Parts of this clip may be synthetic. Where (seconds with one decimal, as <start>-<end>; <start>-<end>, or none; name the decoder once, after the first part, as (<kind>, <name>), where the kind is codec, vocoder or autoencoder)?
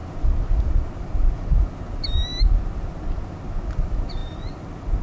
none